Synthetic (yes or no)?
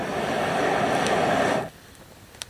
no